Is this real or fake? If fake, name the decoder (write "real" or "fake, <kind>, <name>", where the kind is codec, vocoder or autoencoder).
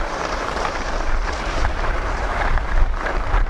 fake, vocoder, BigVGAN v2